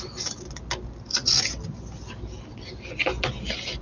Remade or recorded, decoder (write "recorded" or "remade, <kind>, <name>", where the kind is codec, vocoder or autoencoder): recorded